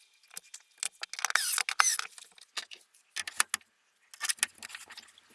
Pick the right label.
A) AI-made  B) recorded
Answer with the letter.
B